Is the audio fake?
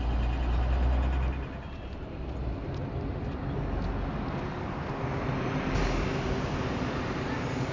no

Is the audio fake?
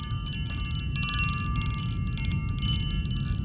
no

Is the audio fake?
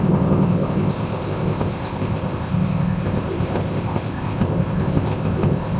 yes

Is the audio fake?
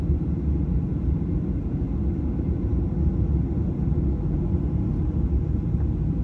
no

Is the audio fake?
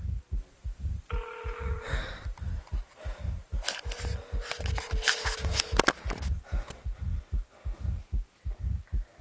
no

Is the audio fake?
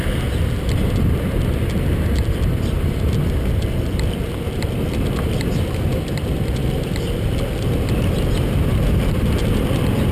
no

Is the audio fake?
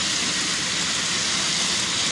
yes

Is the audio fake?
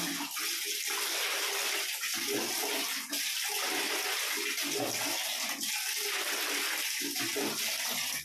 no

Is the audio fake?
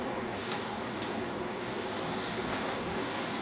yes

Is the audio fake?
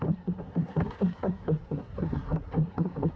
yes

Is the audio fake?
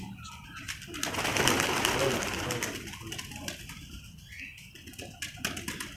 no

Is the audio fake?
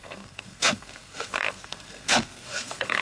yes